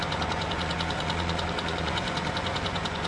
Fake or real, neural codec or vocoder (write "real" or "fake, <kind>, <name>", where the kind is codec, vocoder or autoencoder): fake, vocoder, Vocos